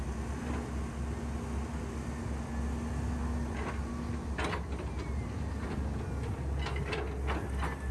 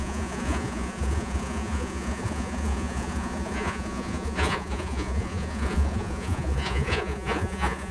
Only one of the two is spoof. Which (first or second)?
second